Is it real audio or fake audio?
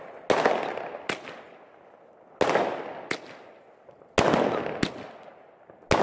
real